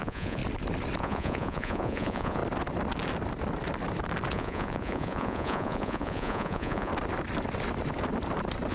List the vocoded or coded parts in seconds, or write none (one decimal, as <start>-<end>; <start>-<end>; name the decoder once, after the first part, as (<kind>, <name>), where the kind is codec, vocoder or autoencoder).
0.0-0.4 (vocoder, Vocos); 1.0-2.4; 4.3-6.9